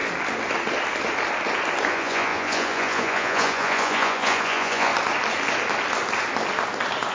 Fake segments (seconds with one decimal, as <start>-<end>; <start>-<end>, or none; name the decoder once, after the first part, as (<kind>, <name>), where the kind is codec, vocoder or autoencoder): 1.9-4.9 (vocoder, Vocos)